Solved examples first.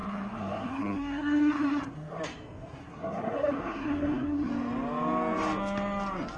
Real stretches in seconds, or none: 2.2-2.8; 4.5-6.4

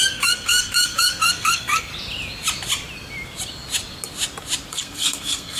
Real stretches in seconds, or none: 1.9-4.7

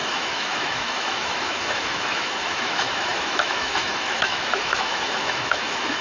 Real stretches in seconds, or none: none

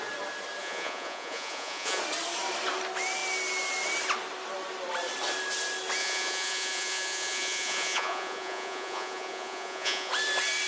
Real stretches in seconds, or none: 0.0-0.6; 2.0-6.0; 10.1-10.7

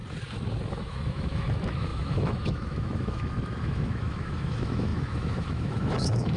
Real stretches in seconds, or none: 0.0-0.7

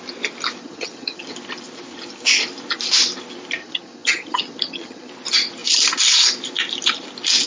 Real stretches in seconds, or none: 0.0-0.6; 1.2-3.6; 5.1-7.5